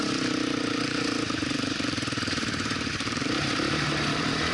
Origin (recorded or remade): remade